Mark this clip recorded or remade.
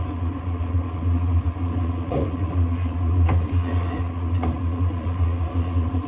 remade